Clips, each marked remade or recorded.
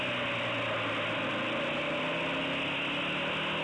recorded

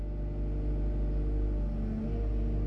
recorded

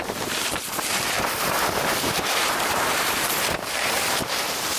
remade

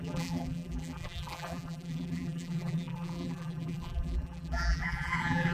remade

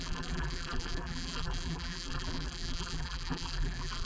remade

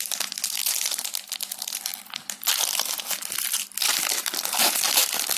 recorded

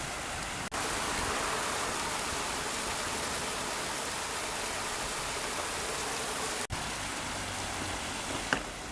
recorded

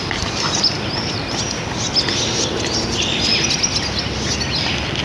recorded